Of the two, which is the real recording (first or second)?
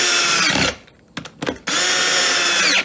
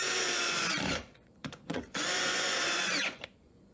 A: first